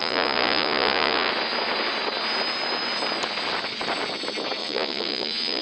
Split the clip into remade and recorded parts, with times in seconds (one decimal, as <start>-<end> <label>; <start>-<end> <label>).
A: 0.0-1.3 remade; 1.3-4.6 recorded; 4.6-5.6 remade

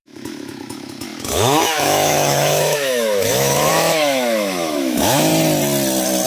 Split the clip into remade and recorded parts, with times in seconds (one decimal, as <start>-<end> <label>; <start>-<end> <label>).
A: 0.0-5.3 remade; 5.3-6.3 recorded

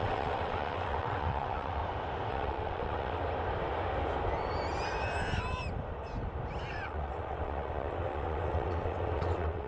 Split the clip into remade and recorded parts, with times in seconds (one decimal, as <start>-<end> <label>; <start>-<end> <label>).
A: 0.0-1.8 remade; 1.8-2.3 recorded; 2.3-3.2 remade; 3.2-6.7 recorded; 6.7-9.7 remade

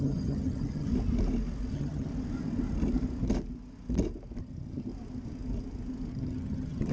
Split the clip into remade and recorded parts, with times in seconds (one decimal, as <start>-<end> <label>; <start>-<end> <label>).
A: 0.0-0.9 remade; 0.9-1.7 recorded; 1.7-2.1 remade; 2.1-4.4 recorded; 4.4-4.9 remade; 4.9-6.1 recorded; 6.1-6.9 remade

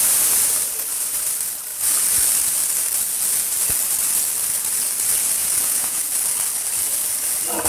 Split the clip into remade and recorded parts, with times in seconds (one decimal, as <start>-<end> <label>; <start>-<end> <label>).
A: 0.0-5.4 recorded; 5.4-6.0 remade; 6.0-7.7 recorded

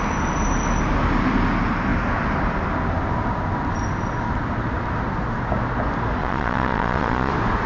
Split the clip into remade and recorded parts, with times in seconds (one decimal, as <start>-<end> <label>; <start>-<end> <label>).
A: 0.0-6.2 recorded; 6.2-7.3 remade; 7.3-7.7 recorded